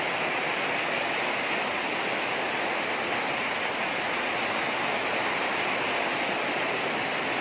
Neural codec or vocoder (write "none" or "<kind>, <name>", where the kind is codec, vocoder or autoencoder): none